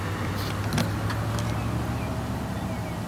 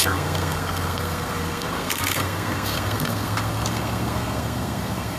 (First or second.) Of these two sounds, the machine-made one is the second